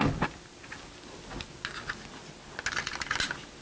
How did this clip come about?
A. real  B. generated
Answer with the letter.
A